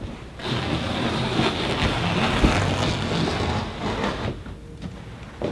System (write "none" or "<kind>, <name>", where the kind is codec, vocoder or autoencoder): none